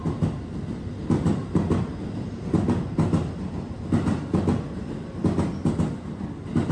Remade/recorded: recorded